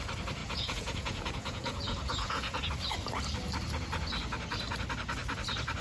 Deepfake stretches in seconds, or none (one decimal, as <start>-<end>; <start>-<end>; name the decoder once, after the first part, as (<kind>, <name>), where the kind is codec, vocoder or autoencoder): 0.4-2.7 (vocoder, Vocos)